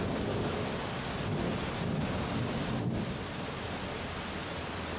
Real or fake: real